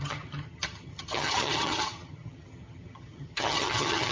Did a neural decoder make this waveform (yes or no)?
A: yes